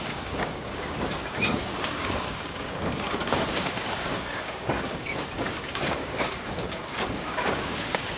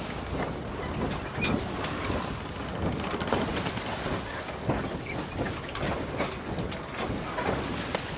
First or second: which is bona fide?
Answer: second